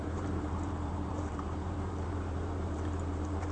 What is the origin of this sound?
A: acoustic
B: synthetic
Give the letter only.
B